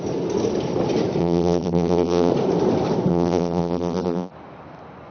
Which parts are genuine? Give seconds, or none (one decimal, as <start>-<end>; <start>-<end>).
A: 0.0-1.2; 2.3-3.1; 4.3-5.1